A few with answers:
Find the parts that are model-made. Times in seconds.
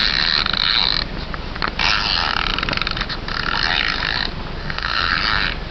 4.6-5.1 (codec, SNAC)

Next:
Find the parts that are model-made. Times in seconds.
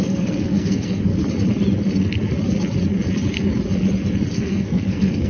0.0-1.1 (codec, SNAC); 4.3-5.3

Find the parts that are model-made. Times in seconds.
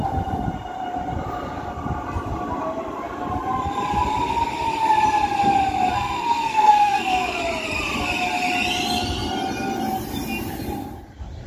5.9-7.4 (codec, SNAC)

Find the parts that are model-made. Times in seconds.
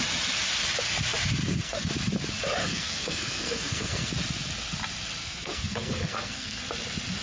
1.4-1.9 (codec, SNAC); 2.6-4.1; 5.2-6.6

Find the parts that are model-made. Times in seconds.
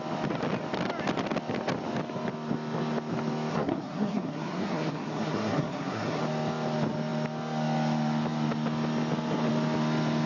3.5-6.2 (codec, SNAC)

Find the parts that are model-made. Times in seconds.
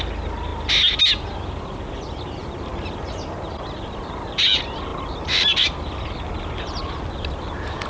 none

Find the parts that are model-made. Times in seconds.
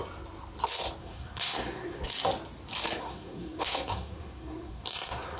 1.0-2.1 (codec, SNAC); 3.0-5.4